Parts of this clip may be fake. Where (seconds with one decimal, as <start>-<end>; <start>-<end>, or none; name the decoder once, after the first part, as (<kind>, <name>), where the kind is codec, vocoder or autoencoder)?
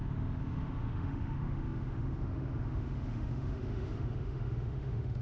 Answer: 0.0-5.2 (autoencoder, DAC-VAE)